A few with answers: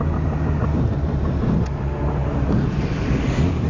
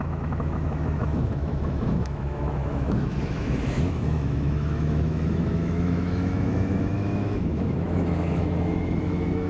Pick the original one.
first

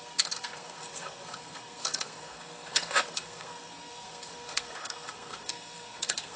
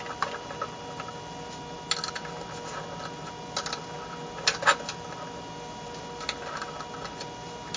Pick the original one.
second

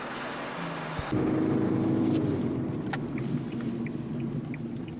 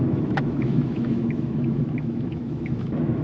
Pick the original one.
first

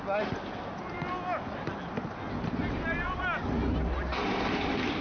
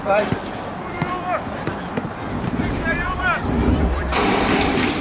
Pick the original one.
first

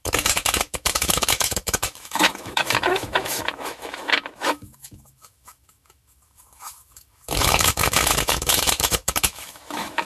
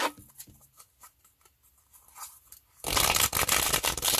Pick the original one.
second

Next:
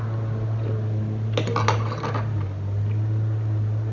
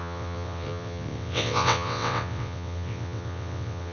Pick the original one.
first